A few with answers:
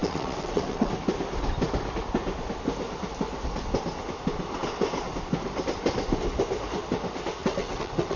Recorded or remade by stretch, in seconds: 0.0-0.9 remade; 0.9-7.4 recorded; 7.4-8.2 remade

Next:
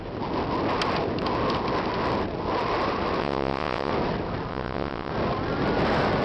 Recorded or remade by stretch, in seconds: 0.0-3.2 recorded; 3.2-3.9 remade; 3.9-4.5 recorded; 4.5-5.1 remade; 5.1-6.2 recorded

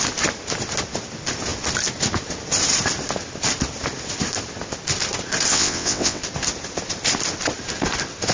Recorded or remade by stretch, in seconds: 0.0-5.5 recorded; 5.5-6.2 remade; 6.2-8.3 recorded

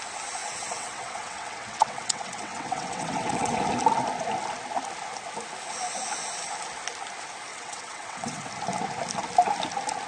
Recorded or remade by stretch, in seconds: 0.0-0.4 recorded; 0.4-3.6 remade; 3.6-7.5 recorded; 7.5-8.5 remade; 8.5-10.1 recorded

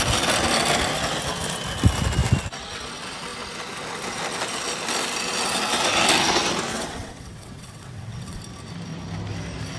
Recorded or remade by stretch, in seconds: 0.0-6.7 recorded; 6.7-8.4 remade; 8.4-9.8 recorded

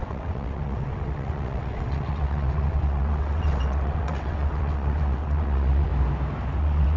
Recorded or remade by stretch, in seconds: 0.0-5.9 remade; 5.9-6.6 recorded; 6.6-7.0 remade

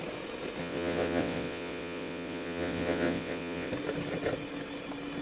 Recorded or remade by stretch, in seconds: 0.0-0.6 recorded; 0.6-3.7 remade; 3.7-5.2 recorded

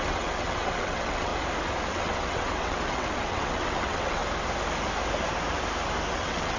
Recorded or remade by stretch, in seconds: 0.0-1.3 remade; 1.3-1.9 recorded; 1.9-4.2 remade; 4.2-6.1 recorded; 6.1-6.6 remade